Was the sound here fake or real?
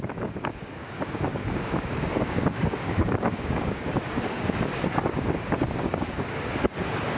fake